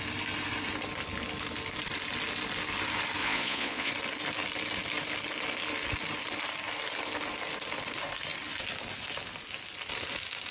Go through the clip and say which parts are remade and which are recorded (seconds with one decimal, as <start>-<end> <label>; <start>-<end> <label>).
0.0-3.2 recorded; 3.2-3.9 remade; 3.9-10.5 recorded